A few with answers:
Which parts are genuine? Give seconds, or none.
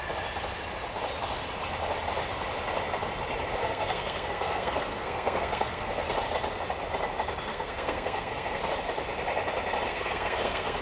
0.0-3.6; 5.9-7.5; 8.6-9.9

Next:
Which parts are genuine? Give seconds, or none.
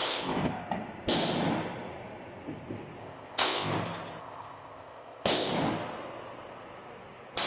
0.5-3.0; 3.7-4.2; 5.5-7.5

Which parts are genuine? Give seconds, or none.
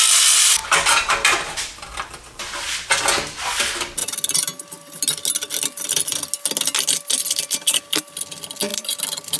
0.0-0.6; 3.0-8.7